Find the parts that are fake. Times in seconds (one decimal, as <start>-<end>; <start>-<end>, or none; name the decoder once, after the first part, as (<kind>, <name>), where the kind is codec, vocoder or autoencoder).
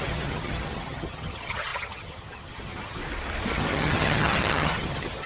0.0-3.0 (vocoder, HiFi-GAN); 3.5-5.3